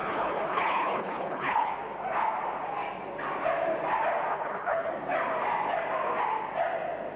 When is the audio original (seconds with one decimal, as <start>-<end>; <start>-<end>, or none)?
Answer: 1.7-4.3; 4.9-7.2